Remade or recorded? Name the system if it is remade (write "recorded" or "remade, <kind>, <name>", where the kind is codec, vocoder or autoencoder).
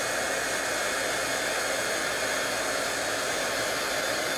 recorded